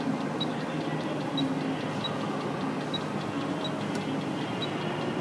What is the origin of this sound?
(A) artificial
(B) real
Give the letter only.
B